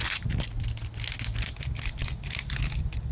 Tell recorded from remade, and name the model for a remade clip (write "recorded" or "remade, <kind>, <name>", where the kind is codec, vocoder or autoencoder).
recorded